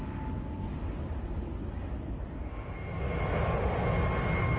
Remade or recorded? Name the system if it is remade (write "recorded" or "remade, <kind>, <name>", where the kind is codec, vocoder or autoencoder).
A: recorded